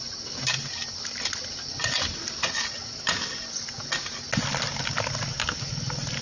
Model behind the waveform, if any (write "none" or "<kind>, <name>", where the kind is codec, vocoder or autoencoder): none